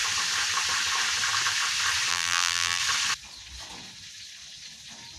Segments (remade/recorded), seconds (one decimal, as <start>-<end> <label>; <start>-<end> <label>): 0.0-2.1 recorded; 2.1-2.8 remade; 2.8-5.2 recorded